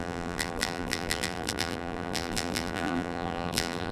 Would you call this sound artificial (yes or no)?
yes